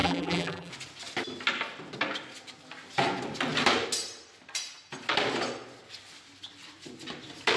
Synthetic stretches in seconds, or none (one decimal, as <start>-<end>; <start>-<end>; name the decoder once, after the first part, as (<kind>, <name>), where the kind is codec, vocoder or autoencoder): 0.0-0.7 (vocoder, BigVGAN v2)